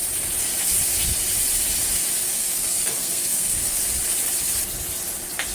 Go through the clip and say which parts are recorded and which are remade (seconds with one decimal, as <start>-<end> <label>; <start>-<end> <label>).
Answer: 0.0-2.2 recorded; 2.2-3.8 remade; 3.8-5.5 recorded